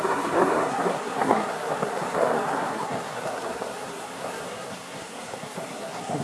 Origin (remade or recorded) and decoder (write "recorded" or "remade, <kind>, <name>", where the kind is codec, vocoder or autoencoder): remade, codec, SNAC